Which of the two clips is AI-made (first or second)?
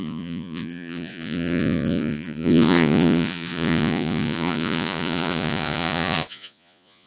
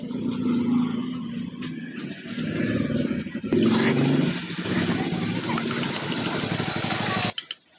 first